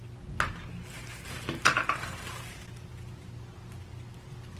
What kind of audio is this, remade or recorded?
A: recorded